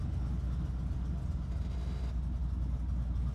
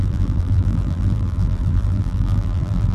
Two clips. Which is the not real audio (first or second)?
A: second